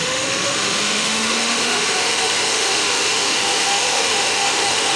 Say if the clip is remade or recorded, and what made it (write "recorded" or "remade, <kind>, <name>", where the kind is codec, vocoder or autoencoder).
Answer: remade, autoencoder, DAC-VAE